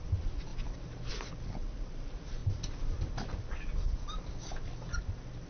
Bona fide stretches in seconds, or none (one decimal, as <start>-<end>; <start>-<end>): 0.0-5.5